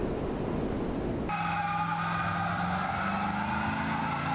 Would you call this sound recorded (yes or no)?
yes